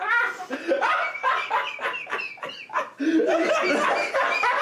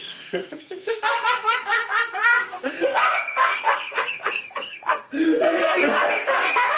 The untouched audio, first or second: first